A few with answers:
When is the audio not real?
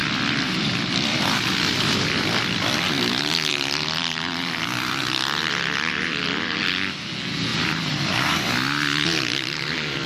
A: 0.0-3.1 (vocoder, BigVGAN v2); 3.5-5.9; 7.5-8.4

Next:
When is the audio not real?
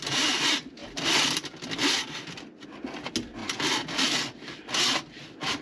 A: 0.8-1.9 (vocoder, BigVGAN v2); 3.4-5.6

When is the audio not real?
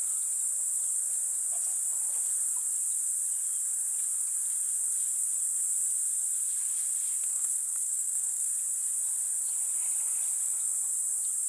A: 7.3-8.5 (codec, SNAC)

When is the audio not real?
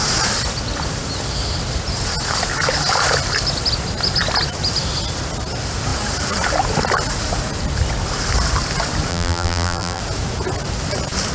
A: 9.1-10.0 (vocoder, BigVGAN v2)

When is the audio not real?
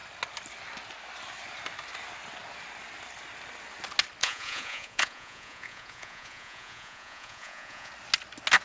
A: 4.2-7.9 (vocoder, Vocos)